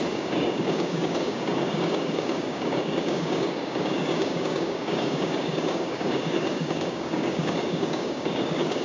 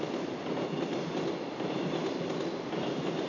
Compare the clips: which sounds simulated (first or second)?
first